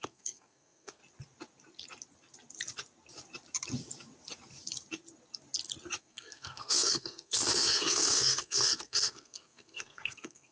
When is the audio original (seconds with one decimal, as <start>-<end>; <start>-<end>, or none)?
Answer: 1.0-6.0